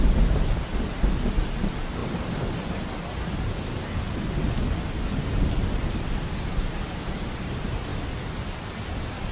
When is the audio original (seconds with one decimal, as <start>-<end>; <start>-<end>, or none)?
0.0-9.3